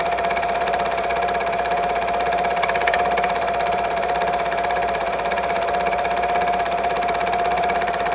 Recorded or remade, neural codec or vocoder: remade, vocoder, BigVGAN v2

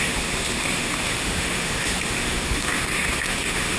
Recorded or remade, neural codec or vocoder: remade, autoencoder, DAC-VAE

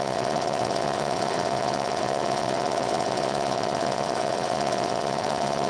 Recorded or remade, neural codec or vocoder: remade, vocoder, WaveNeXt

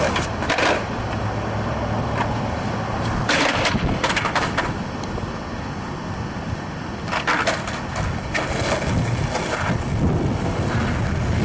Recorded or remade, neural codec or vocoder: recorded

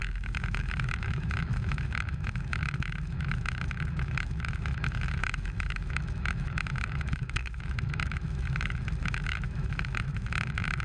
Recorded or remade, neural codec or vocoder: remade, autoencoder, DAC-VAE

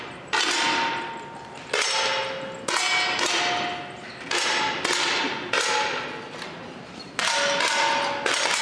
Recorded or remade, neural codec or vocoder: recorded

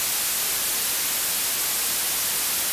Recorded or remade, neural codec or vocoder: recorded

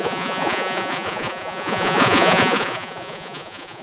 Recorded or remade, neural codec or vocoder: remade, vocoder, Vocos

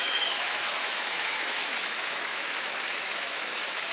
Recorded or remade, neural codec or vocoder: remade, autoencoder, DAC-VAE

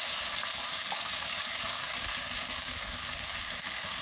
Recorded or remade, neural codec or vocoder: remade, codec, DAC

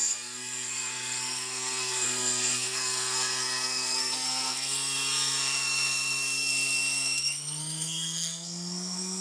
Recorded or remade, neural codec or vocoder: remade, codec, SNAC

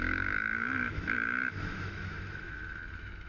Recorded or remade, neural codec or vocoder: remade, autoencoder, DAC-VAE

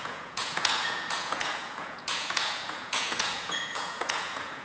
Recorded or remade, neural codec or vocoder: remade, vocoder, Vocos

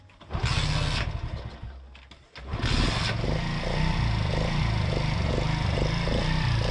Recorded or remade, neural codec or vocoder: recorded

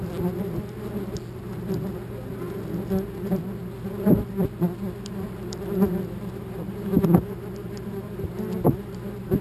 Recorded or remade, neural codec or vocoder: recorded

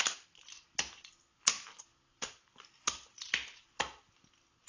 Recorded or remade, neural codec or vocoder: recorded